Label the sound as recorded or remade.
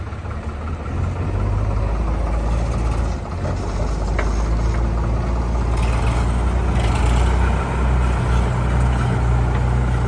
recorded